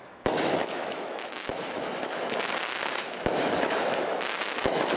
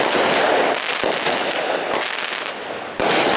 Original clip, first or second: second